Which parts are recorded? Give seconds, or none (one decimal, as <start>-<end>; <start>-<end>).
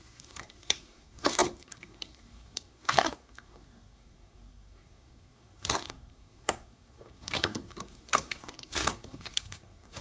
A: none